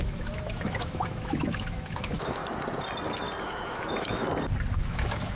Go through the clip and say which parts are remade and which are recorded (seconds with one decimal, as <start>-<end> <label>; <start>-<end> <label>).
0.0-2.4 remade; 2.4-3.4 recorded; 3.4-4.2 remade; 4.2-4.7 recorded; 4.7-5.4 remade